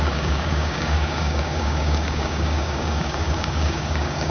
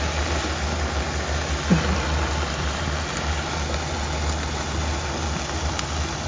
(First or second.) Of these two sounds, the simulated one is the first